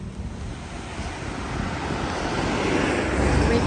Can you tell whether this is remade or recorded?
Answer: recorded